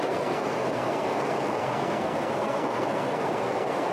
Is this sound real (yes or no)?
no